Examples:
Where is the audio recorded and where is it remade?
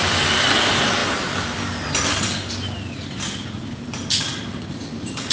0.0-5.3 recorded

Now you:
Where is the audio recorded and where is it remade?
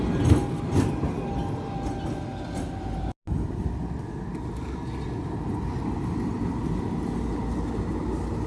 0.0-8.5 recorded